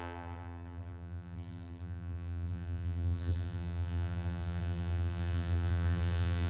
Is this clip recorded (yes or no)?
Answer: no